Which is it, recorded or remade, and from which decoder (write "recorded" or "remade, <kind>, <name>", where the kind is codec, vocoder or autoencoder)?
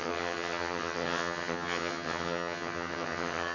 remade, vocoder, HiFi-GAN